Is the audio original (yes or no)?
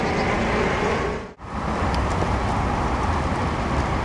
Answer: yes